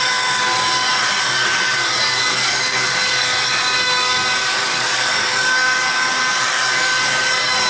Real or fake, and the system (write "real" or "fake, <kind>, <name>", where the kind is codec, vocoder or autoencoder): fake, codec, DAC